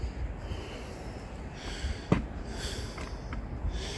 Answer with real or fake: real